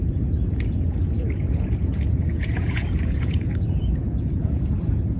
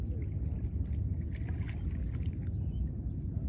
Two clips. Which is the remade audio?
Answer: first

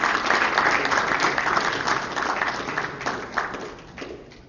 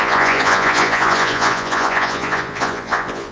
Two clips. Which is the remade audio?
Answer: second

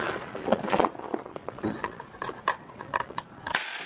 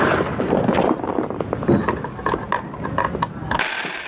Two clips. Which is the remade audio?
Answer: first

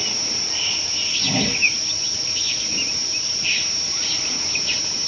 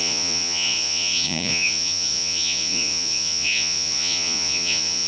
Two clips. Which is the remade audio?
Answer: second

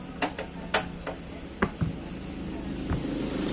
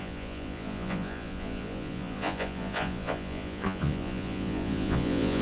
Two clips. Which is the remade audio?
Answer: second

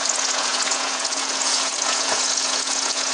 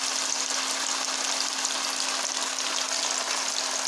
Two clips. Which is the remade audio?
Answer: first